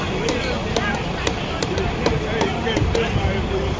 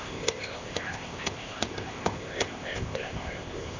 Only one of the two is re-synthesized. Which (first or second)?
second